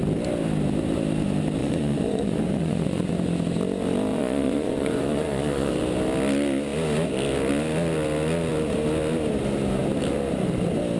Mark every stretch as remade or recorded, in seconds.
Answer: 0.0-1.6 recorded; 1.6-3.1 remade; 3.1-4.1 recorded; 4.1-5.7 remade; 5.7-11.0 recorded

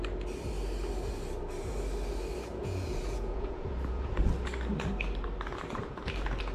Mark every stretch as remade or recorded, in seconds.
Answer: 0.0-2.5 recorded; 2.5-4.2 remade; 4.2-6.5 recorded

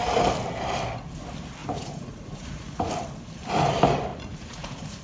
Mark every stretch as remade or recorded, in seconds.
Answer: 0.0-1.6 recorded; 1.6-2.9 remade; 2.9-4.1 recorded; 4.1-5.0 remade

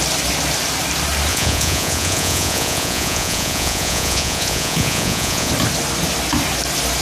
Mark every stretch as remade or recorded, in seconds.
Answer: 0.0-1.3 recorded; 1.3-5.5 remade; 5.5-7.0 recorded

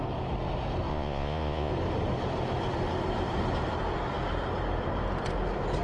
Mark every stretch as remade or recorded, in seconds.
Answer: 0.0-0.9 recorded; 0.9-1.7 remade; 1.7-5.8 recorded

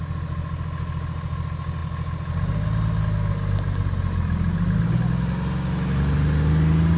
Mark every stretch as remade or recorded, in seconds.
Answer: 0.0-7.0 recorded

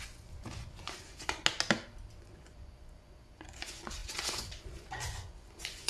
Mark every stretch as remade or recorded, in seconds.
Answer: 0.0-1.4 remade; 1.4-2.1 recorded; 2.1-5.9 remade

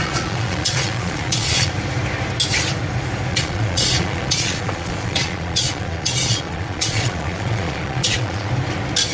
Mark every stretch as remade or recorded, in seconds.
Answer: 0.0-1.7 remade; 1.7-3.3 recorded; 3.3-8.5 remade; 8.5-9.1 recorded